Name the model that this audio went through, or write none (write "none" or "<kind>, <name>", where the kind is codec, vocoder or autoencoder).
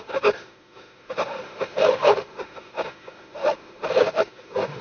autoencoder, DAC-VAE